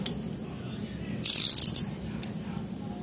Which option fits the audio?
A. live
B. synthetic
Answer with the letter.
A